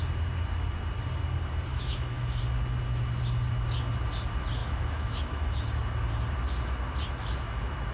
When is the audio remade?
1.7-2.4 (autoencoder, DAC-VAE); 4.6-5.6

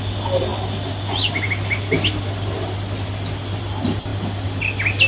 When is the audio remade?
none

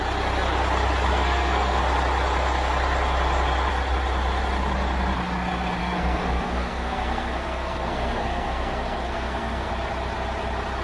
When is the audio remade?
1.1-1.8 (codec, SNAC); 5.8-9.7

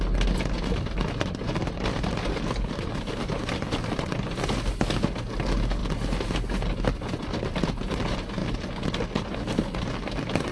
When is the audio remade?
none